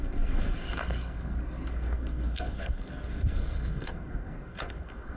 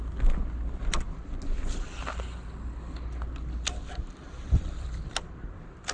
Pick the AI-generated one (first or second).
first